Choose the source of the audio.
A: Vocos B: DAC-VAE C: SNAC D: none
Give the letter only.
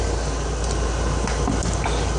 D